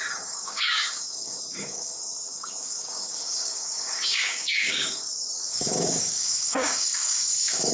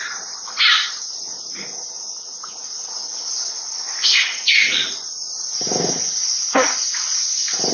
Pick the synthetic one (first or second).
first